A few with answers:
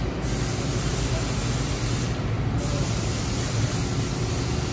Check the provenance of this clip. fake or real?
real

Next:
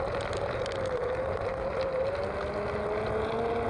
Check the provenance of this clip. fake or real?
real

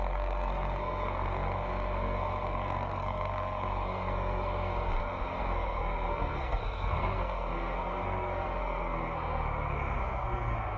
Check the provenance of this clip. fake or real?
fake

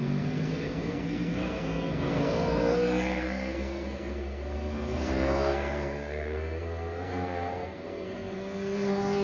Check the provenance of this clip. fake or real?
fake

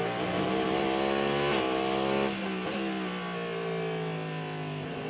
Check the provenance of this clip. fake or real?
real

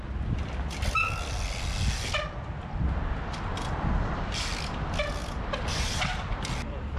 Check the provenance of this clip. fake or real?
real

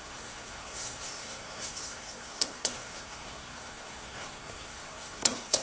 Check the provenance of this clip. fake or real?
fake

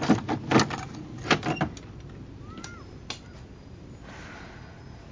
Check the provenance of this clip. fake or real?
real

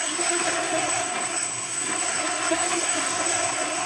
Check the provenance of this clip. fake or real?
fake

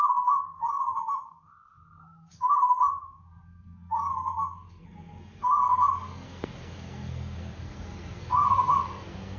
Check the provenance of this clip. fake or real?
fake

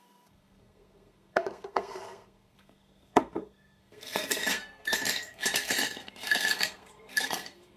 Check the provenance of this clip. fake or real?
fake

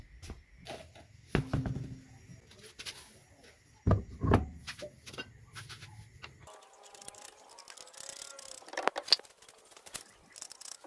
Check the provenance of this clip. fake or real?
real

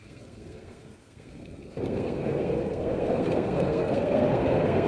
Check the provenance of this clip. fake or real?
fake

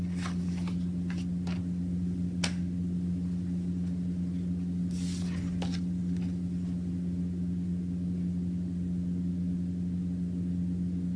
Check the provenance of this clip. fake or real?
real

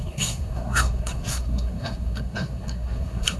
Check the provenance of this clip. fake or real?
fake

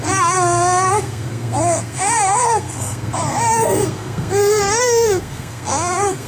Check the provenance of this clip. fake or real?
fake